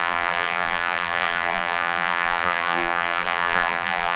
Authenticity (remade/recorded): remade